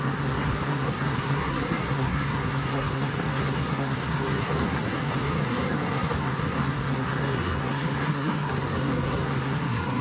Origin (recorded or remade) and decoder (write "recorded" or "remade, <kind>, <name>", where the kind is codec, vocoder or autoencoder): remade, codec, SNAC